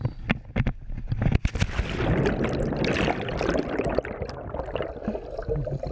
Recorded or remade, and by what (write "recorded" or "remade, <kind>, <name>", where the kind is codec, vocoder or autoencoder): recorded